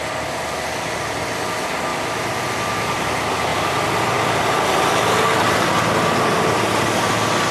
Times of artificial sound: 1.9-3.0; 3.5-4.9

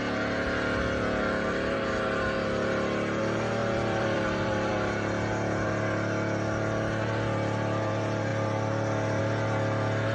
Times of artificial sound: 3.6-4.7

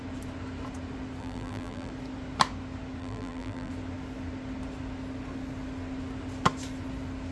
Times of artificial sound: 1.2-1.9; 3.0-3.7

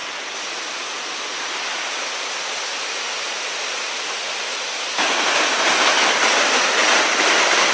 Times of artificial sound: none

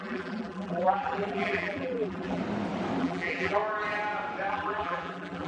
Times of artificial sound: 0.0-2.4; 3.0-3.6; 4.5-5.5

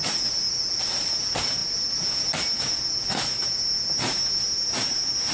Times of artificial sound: 0.0-1.1